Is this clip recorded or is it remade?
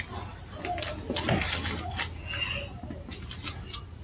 recorded